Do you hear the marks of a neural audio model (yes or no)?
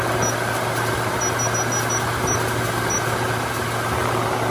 no